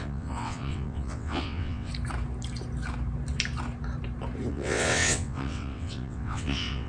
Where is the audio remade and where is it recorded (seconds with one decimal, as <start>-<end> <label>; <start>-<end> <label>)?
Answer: 0.0-1.9 remade; 1.9-4.5 recorded; 4.5-6.9 remade